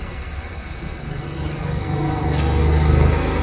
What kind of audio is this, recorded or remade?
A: remade